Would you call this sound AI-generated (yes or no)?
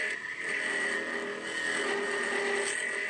no